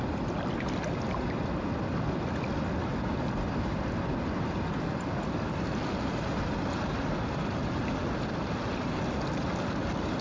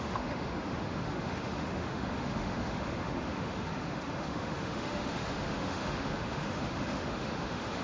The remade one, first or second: second